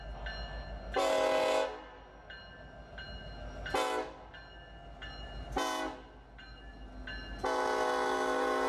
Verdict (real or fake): real